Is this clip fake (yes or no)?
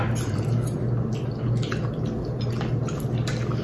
no